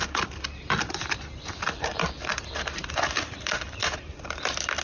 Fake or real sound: fake